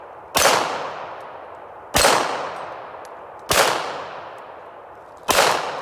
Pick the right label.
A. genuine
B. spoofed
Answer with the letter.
A